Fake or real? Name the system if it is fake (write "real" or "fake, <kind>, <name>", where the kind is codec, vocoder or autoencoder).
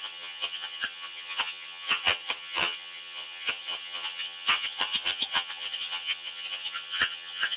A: fake, vocoder, HiFi-GAN